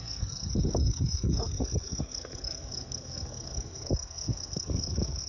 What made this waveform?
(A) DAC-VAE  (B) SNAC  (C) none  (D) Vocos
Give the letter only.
B